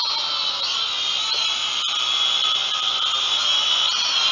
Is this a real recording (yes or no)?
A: yes